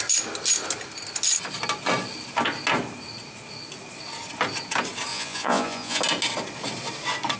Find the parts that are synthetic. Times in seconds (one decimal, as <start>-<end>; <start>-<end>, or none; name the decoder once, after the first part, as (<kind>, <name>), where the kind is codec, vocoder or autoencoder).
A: 5.1-6.0 (vocoder, Vocos)